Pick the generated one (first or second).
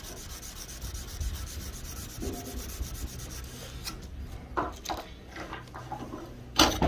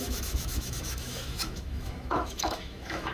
second